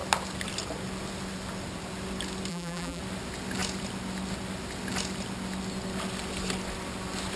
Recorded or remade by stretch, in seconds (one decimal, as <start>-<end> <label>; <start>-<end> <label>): 0.0-2.5 recorded; 2.5-3.0 remade; 3.0-7.4 recorded